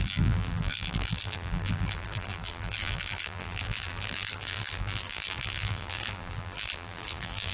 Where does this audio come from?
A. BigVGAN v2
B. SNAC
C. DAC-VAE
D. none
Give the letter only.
A